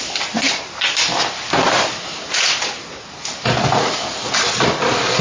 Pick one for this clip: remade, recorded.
recorded